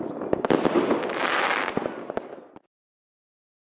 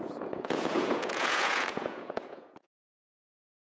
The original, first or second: first